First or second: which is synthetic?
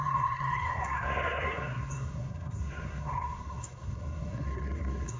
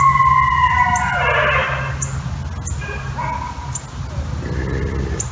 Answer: first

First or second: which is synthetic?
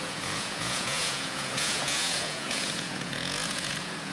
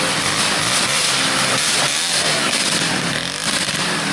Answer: first